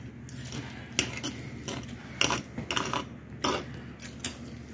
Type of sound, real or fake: real